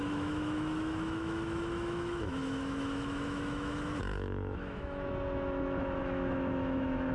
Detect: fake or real fake